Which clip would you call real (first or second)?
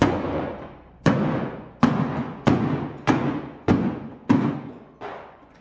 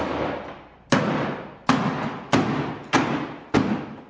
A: second